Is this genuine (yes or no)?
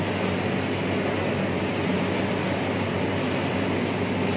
yes